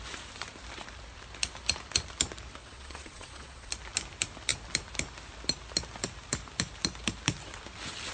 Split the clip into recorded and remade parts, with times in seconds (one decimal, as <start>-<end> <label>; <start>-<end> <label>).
0.0-2.6 recorded; 2.6-3.7 remade; 3.7-8.1 recorded